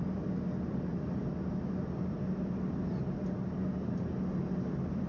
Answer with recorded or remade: recorded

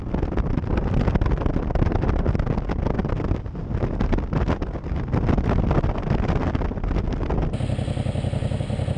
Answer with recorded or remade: recorded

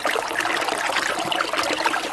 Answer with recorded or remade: recorded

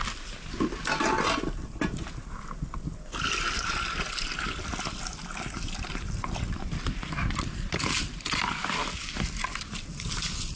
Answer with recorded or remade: recorded